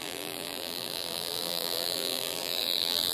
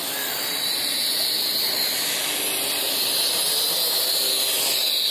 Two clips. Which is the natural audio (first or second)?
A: second